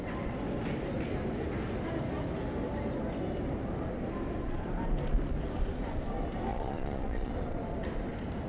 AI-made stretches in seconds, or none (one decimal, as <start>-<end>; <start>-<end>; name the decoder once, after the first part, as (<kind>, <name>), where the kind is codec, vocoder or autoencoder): 6.5-7.3 (vocoder, Vocos)